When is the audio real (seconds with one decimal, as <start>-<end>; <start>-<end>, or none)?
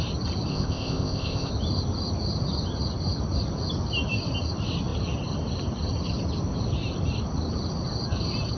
0.0-0.5; 1.5-8.6